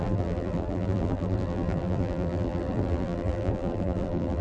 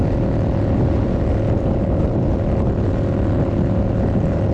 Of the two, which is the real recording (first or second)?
second